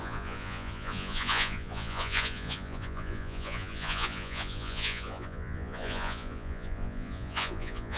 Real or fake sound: fake